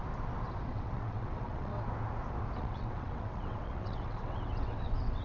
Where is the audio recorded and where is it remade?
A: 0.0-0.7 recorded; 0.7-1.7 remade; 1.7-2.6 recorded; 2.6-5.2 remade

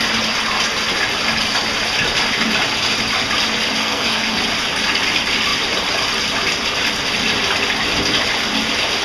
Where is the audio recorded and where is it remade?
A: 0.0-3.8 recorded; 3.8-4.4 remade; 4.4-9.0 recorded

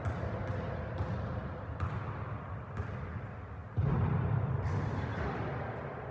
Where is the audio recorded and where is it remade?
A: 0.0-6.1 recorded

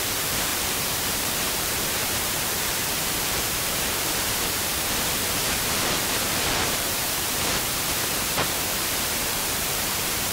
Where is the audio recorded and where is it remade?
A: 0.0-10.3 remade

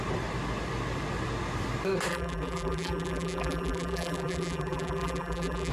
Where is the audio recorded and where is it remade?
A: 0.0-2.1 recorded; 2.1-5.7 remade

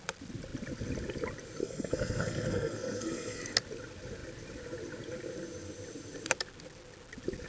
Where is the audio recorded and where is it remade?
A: 0.0-1.6 recorded; 1.6-3.4 remade; 3.4-7.5 recorded

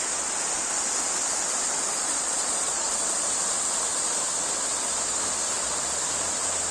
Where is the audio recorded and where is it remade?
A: 0.0-2.0 recorded; 2.0-2.9 remade; 2.9-6.7 recorded